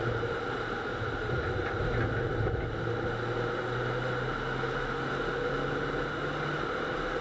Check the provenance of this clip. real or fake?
real